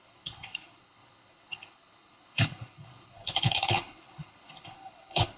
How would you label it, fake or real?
fake